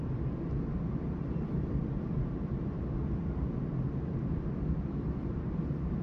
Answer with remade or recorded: remade